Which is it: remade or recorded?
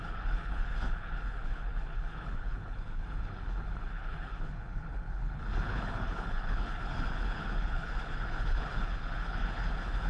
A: remade